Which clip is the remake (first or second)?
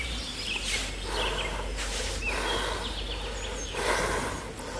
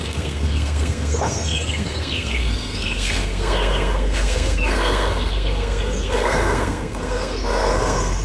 second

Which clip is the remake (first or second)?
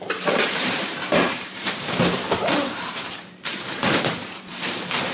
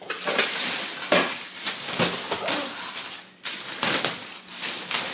first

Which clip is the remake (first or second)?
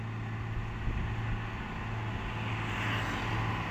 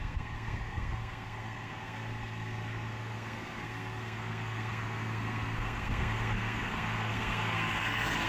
second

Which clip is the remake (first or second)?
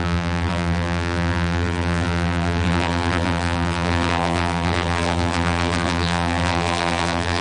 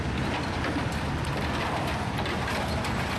first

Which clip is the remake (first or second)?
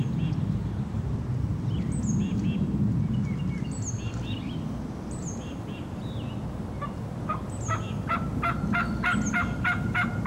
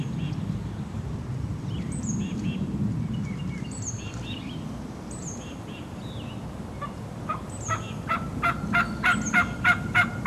second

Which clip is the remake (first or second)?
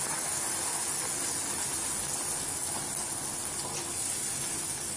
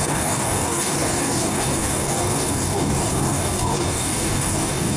second